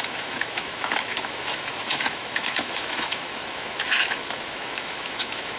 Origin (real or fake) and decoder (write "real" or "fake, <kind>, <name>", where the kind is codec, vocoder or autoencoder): fake, autoencoder, DAC-VAE